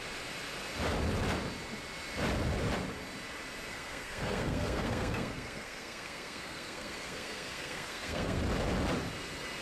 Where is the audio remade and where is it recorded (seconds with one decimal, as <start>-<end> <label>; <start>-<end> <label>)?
0.0-3.7 recorded; 3.7-8.4 remade; 8.4-9.6 recorded